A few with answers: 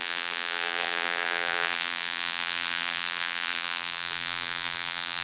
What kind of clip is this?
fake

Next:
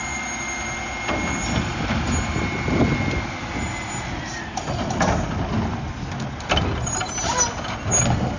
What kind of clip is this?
real